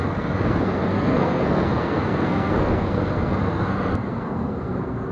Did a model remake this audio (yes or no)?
yes